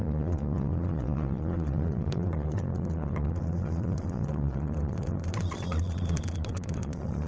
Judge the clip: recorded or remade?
remade